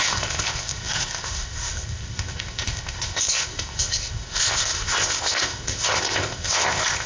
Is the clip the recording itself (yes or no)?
no